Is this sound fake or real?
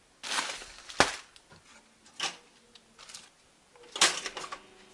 real